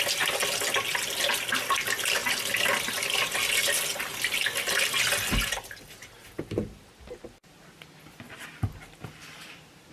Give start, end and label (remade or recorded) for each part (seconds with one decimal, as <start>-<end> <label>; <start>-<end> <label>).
0.0-9.9 recorded